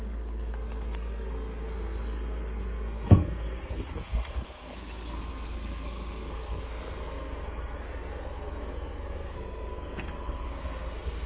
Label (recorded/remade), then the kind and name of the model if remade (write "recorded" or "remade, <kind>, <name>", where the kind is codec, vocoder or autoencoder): remade, codec, SNAC